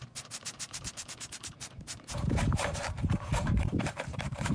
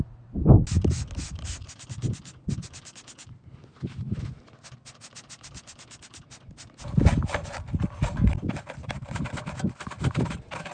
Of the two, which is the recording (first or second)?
second